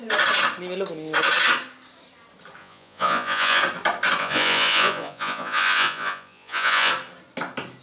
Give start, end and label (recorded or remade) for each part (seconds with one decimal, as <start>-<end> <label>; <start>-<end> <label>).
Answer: 0.0-2.6 recorded; 2.6-3.6 remade; 3.6-4.2 recorded; 4.2-6.9 remade; 6.9-7.8 recorded